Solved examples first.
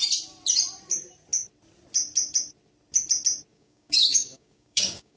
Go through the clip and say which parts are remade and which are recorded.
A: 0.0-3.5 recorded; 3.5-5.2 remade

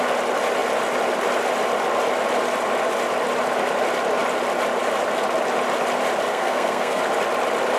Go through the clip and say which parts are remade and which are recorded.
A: 0.0-6.3 recorded; 6.3-7.0 remade; 7.0-7.8 recorded

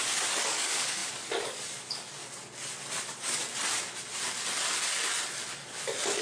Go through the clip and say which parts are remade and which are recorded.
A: 0.0-2.2 remade; 2.2-3.0 recorded; 3.0-3.4 remade; 3.4-6.2 recorded

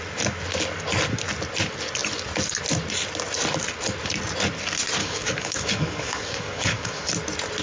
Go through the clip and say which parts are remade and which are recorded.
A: 0.0-5.0 recorded; 5.0-7.1 remade; 7.1-7.6 recorded

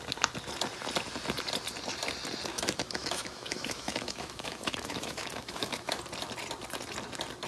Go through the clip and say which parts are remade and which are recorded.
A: 0.0-2.5 recorded; 2.5-6.0 remade; 6.0-7.5 recorded

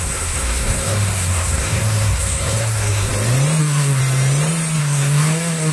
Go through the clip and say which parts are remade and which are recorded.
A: 0.0-3.1 remade; 3.1-3.6 recorded; 3.6-4.0 remade; 4.0-4.8 recorded; 4.8-5.7 remade

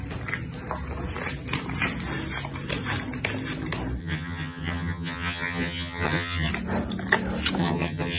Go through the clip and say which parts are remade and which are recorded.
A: 0.0-4.0 recorded; 4.0-6.5 remade; 6.5-7.6 recorded; 7.6-8.2 remade